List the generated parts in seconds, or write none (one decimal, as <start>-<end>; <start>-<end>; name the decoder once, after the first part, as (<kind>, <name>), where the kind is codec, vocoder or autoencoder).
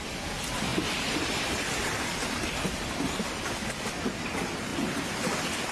0.7-4.1 (vocoder, BigVGAN v2)